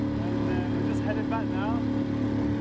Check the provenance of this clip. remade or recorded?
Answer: recorded